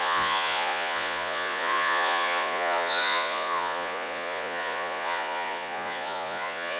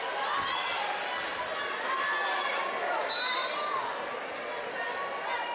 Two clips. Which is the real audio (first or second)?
second